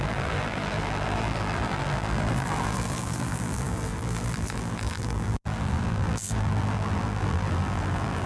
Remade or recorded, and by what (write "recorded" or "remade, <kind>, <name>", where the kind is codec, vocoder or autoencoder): remade, vocoder, BigVGAN v2